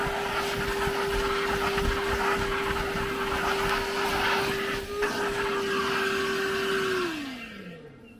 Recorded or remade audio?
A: recorded